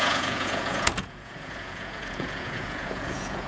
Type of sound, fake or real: fake